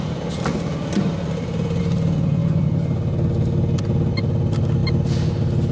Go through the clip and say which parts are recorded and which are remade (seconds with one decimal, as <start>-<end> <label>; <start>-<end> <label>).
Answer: 0.0-5.7 recorded